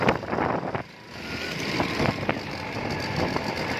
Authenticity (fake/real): real